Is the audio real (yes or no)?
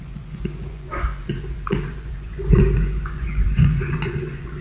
no